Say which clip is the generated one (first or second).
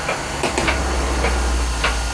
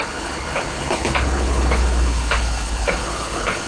second